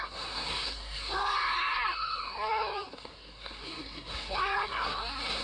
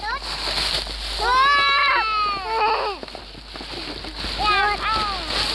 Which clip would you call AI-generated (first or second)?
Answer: first